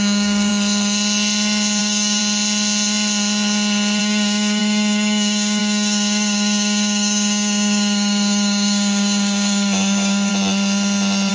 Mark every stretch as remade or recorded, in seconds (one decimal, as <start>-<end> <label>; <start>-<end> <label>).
0.0-0.5 remade; 0.5-1.8 recorded; 1.8-2.2 remade; 2.2-4.0 recorded; 4.0-10.3 remade; 10.3-11.3 recorded